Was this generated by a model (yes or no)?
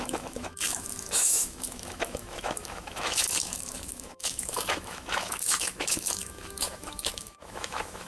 yes